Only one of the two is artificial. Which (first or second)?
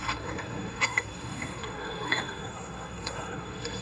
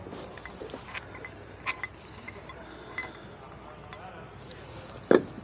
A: first